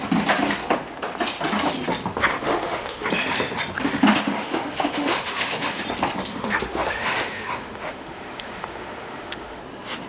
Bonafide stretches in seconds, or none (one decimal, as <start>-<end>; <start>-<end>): 0.0-2.3; 3.1-4.1; 5.8-6.3; 9.6-10.1

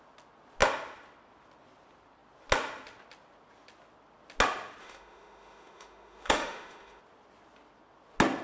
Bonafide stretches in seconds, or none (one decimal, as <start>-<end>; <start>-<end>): 0.0-4.8; 7.0-8.4

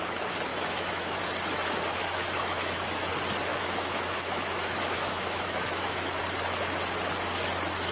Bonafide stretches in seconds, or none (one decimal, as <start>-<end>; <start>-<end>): 0.0-0.5; 1.2-1.9; 3.1-3.5; 6.2-7.9